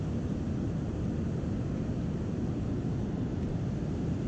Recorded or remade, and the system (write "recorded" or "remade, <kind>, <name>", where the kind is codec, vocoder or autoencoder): recorded